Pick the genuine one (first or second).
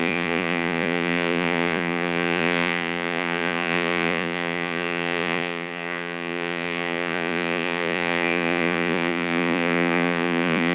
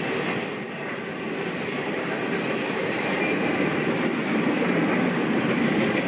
second